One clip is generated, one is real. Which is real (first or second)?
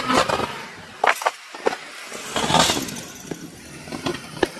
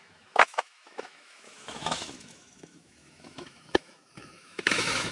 first